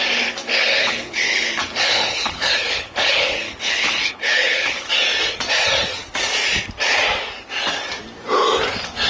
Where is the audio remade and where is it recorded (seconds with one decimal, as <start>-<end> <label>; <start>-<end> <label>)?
0.0-0.4 recorded; 0.4-4.9 remade; 4.9-9.1 recorded